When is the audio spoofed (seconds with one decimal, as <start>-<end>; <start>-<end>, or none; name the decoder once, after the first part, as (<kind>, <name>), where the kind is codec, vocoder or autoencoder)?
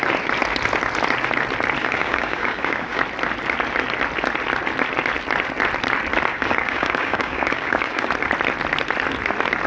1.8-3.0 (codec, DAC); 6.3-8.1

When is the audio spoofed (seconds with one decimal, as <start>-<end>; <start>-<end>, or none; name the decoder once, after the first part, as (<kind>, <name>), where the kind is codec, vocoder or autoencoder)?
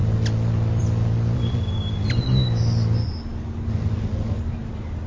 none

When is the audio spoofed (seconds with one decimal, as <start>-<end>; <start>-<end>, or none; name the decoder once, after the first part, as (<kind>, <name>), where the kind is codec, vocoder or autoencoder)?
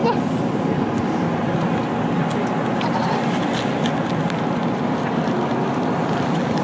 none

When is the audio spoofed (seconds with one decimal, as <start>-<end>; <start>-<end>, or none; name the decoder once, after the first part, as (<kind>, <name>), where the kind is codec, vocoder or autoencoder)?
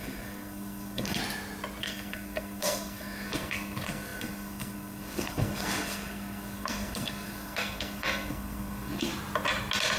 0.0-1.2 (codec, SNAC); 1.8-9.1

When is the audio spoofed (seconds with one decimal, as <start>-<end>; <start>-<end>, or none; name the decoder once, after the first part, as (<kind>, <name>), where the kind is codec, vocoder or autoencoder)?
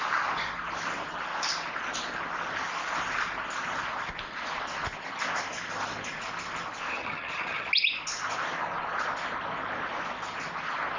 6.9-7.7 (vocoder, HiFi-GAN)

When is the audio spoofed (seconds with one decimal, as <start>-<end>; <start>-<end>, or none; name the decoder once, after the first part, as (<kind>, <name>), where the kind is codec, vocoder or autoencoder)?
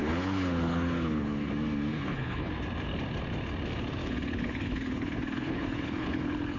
0.0-1.5 (codec, HILCodec); 1.9-2.5; 4.0-6.6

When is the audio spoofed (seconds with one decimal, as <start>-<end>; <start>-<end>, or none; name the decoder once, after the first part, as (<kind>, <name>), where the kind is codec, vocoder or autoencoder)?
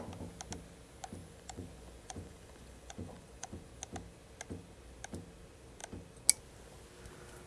1.2-3.7 (vocoder, Vocos)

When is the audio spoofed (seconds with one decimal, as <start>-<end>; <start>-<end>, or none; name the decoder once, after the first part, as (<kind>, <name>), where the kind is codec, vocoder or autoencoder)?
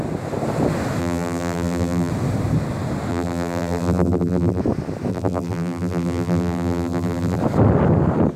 1.0-2.1 (vocoder, BigVGAN v2); 3.1-4.6; 5.1-7.4